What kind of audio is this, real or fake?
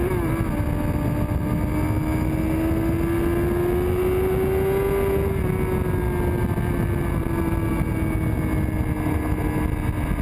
real